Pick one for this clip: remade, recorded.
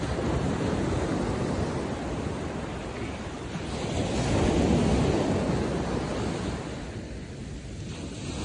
recorded